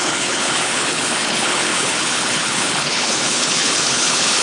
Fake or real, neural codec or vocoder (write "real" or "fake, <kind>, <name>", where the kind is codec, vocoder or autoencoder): fake, codec, HILCodec